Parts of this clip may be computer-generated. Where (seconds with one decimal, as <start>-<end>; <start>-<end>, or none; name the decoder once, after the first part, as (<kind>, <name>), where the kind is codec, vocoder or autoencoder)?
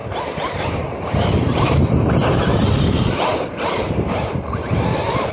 0.0-2.9 (vocoder, BigVGAN v2); 3.3-5.3